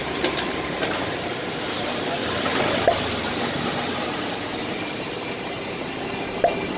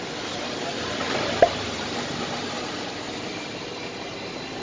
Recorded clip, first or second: second